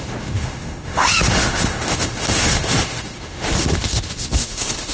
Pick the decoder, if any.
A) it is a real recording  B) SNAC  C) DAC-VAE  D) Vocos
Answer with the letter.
C